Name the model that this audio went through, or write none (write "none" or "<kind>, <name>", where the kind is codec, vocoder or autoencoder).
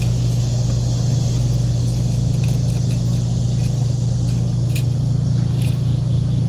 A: none